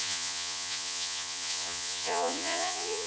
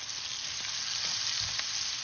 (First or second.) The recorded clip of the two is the second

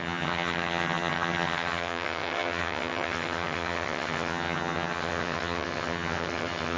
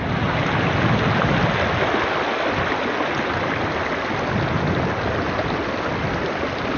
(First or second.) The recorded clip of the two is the second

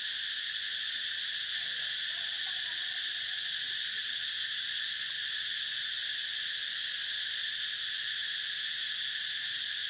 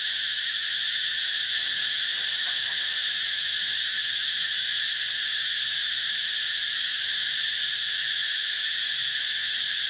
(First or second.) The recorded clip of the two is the first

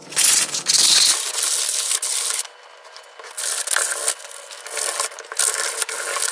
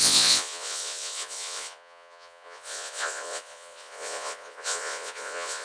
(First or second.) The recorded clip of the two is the first